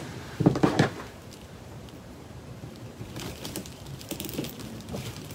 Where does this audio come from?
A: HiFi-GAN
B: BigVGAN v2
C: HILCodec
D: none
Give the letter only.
B